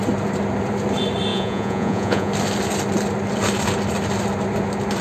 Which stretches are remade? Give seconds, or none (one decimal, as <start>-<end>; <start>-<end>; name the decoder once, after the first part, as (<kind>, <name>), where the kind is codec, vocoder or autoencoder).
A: 1.3-2.3 (vocoder, Vocos)